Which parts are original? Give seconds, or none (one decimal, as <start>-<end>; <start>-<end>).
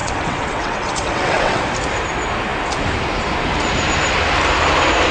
1.6-5.1